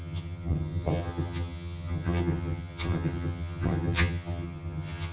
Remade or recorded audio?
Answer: remade